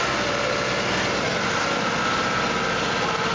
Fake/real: real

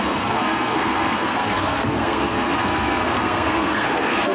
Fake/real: fake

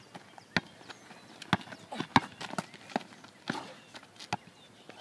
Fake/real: real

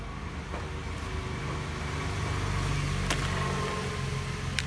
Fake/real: real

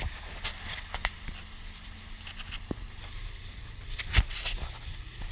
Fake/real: real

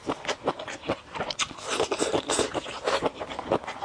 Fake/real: real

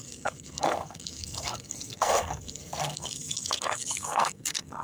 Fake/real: fake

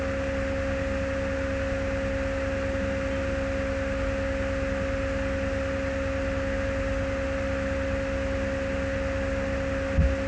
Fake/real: real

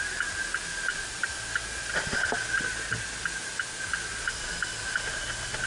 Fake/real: real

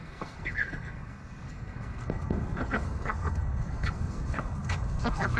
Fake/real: fake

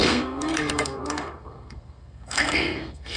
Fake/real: fake